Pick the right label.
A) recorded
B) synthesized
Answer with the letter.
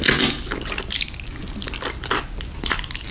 A